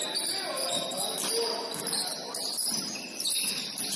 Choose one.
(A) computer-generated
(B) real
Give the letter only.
B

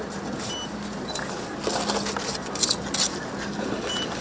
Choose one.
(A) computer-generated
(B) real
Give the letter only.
B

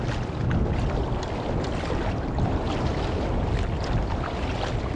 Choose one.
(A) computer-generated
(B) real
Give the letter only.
B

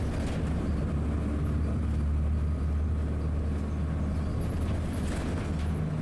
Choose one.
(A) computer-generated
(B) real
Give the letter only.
B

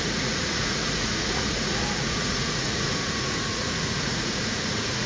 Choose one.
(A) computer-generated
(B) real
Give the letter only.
A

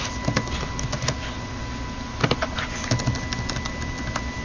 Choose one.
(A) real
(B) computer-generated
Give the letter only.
A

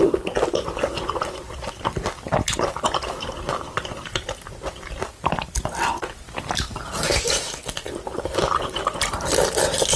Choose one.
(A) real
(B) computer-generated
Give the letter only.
B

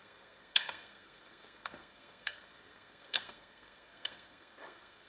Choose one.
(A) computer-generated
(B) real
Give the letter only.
A